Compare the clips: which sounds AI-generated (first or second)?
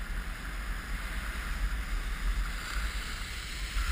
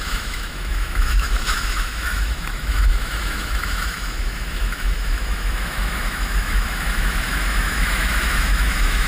second